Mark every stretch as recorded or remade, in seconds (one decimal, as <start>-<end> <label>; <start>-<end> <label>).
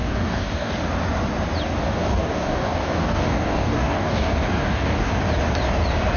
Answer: 0.0-0.7 remade; 0.7-1.8 recorded; 1.8-5.1 remade; 5.1-6.2 recorded